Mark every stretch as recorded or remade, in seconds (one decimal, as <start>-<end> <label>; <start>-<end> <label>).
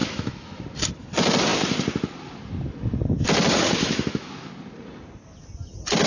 0.0-0.6 remade; 0.6-3.8 recorded; 3.8-4.5 remade; 4.5-6.1 recorded